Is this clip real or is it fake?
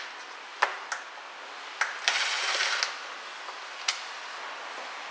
real